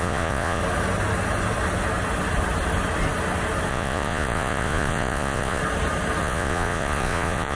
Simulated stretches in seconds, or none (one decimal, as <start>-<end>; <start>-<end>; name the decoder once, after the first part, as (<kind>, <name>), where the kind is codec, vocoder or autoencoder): 0.0-0.6 (vocoder, Vocos); 3.7-5.6; 6.2-7.5